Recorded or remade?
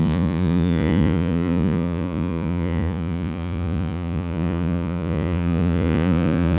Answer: remade